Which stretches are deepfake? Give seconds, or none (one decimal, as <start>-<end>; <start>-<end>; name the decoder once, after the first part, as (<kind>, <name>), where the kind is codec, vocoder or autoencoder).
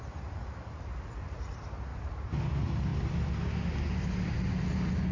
1.9-2.5 (vocoder, BigVGAN v2)